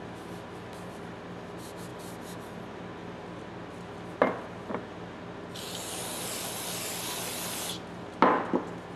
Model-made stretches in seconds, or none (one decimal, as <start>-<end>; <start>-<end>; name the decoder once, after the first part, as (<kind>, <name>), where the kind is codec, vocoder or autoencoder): none